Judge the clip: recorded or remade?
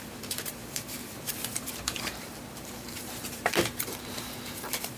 remade